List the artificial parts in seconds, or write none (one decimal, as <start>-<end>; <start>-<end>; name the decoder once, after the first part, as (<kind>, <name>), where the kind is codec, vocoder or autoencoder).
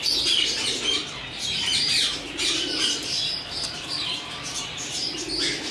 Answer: 1.7-5.1 (vocoder, BigVGAN v2)